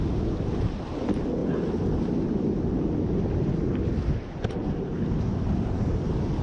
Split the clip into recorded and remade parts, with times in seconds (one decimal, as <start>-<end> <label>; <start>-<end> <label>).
0.0-6.4 recorded